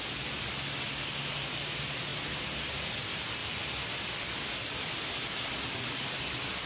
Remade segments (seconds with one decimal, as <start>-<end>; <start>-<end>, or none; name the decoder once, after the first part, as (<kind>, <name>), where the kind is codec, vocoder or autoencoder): none